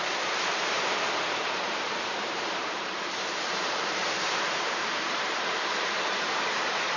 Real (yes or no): no